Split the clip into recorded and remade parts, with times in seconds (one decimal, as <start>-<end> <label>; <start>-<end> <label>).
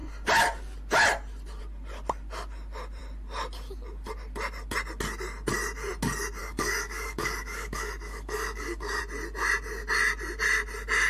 0.0-6.4 recorded; 6.4-9.0 remade; 9.0-11.1 recorded